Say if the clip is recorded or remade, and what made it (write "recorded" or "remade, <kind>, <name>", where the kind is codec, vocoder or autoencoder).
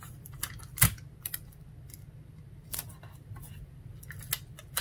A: recorded